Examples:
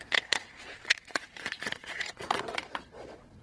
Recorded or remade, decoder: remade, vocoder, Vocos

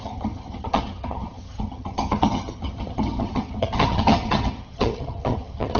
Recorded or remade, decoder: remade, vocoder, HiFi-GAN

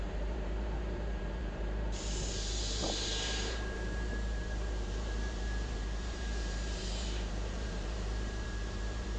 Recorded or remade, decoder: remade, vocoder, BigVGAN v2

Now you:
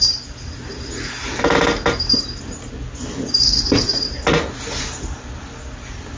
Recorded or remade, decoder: recorded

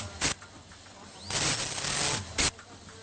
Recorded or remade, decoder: recorded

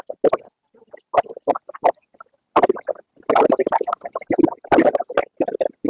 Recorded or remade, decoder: recorded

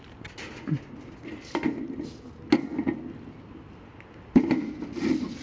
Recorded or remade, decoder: recorded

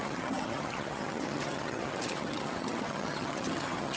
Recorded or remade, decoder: remade, vocoder, HiFi-GAN